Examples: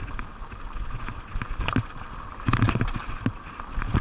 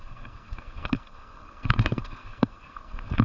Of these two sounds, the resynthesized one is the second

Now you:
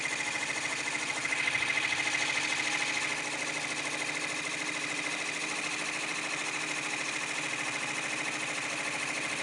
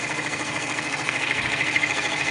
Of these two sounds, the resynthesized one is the second